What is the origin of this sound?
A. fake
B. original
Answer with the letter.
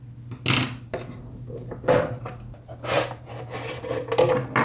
B